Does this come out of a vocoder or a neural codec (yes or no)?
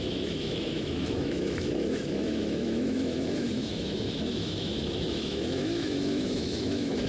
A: yes